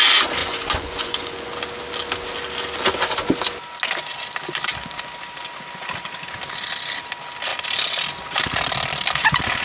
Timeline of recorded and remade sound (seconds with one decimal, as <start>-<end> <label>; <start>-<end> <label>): 0.0-0.4 recorded; 0.4-1.5 remade; 1.5-9.6 recorded